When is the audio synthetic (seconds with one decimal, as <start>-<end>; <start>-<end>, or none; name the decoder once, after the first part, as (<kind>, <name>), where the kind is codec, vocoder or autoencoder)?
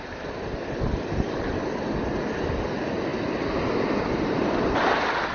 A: none